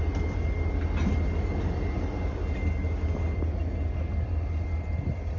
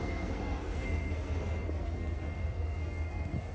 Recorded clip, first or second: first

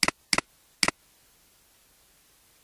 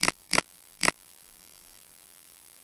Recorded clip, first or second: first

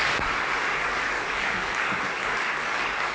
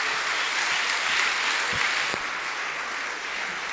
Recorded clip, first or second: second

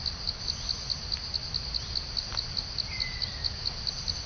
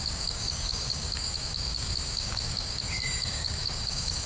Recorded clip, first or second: first